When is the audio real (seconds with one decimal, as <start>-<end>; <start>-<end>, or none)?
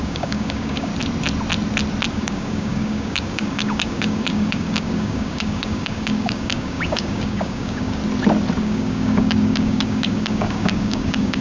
0.9-2.1; 8.0-8.6